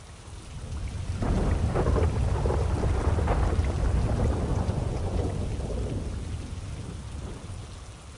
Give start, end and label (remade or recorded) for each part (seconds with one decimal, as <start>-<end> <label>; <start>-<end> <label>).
0.0-4.5 recorded; 4.5-5.3 remade; 5.3-8.2 recorded